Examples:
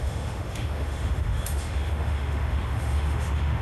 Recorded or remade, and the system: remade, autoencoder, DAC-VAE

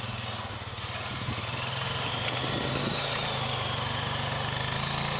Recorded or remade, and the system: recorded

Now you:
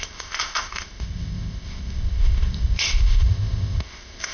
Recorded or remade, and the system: remade, codec, ZipCodec